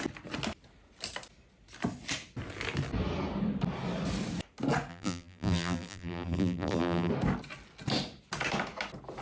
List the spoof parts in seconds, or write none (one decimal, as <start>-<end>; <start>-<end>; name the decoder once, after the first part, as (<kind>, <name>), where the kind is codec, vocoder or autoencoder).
4.9-7.1 (vocoder, BigVGAN v2)